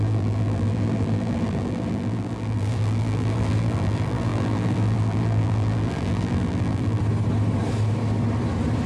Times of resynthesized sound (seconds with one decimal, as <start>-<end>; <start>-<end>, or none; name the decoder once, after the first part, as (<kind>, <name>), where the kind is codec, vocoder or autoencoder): 0.0-7.0 (vocoder, BigVGAN v2)